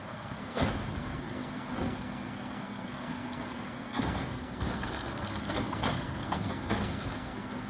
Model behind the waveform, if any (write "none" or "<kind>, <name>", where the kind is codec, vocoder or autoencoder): codec, SNAC